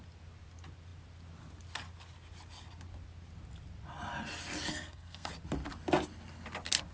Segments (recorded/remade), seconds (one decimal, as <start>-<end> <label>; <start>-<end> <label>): 0.0-4.7 recorded; 4.7-5.3 remade; 5.3-6.9 recorded